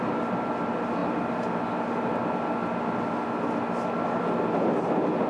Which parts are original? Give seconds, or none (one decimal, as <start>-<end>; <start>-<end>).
0.0-5.3